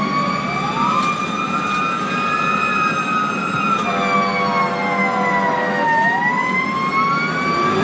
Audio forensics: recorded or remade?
recorded